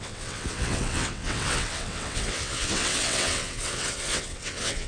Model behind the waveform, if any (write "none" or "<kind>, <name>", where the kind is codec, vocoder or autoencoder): vocoder, WaveNeXt